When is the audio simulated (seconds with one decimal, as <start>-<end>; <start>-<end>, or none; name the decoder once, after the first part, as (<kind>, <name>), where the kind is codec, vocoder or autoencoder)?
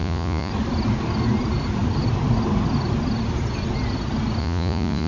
0.0-0.5 (vocoder, Vocos); 4.4-5.1